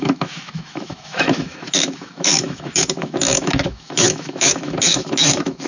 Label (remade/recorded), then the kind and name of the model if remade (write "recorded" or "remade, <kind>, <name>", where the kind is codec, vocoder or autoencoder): remade, autoencoder, DAC-VAE